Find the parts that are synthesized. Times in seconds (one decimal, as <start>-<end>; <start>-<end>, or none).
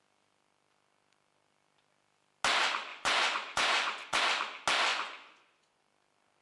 2.9-4.2; 4.9-5.8